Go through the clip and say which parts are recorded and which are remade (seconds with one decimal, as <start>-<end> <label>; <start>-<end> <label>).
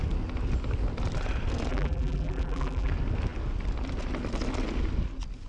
0.0-1.7 recorded; 1.7-2.9 remade; 2.9-5.5 recorded